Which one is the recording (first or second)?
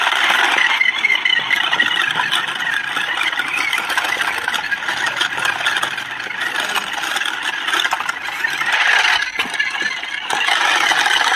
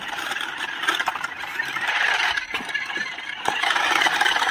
first